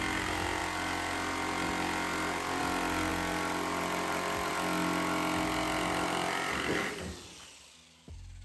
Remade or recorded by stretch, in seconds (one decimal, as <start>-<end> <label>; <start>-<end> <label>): 0.0-8.4 recorded